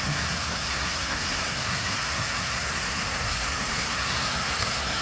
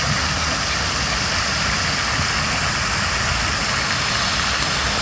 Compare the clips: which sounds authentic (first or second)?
second